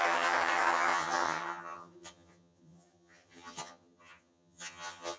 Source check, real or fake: fake